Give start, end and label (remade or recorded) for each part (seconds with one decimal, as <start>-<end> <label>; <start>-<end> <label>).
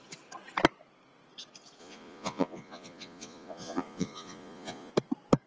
0.0-1.8 recorded; 1.8-4.9 remade; 4.9-5.5 recorded